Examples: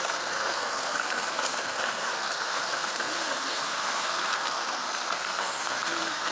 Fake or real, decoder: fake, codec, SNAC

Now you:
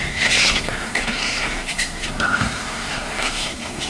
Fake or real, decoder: fake, codec, SNAC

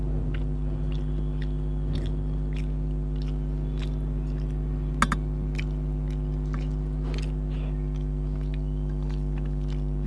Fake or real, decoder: real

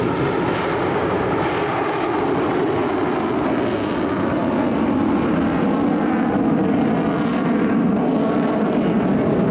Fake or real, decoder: real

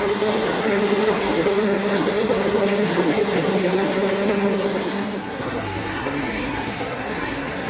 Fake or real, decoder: fake, codec, SNAC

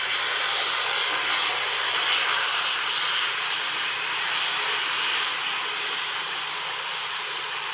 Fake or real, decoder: real